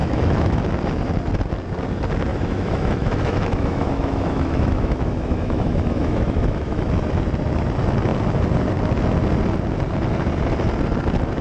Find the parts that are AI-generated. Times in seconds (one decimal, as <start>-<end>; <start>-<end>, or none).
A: 0.0-0.6; 2.3-6.9